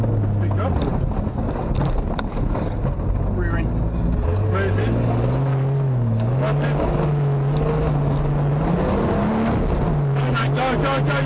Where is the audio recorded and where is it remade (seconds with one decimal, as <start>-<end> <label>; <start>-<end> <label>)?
0.0-11.3 recorded